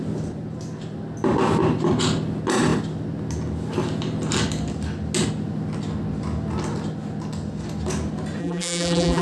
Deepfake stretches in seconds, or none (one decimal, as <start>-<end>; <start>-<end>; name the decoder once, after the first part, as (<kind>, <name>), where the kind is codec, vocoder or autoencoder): 8.4-9.2 (vocoder, BigVGAN v2)